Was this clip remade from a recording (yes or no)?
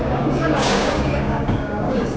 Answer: yes